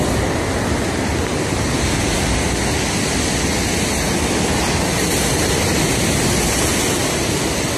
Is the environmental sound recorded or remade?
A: recorded